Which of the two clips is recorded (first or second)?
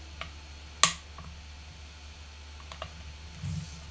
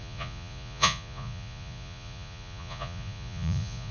first